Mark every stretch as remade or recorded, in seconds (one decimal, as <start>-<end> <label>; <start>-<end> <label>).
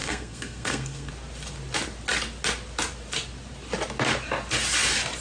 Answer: 0.0-1.1 remade; 1.1-5.2 recorded